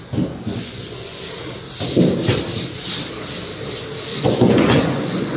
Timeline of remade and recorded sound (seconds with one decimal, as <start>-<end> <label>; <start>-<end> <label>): 0.0-0.5 recorded; 0.5-1.2 remade; 1.2-4.1 recorded; 4.1-5.4 remade